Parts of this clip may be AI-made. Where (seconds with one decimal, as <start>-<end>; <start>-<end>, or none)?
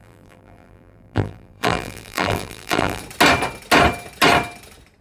0.0-3.0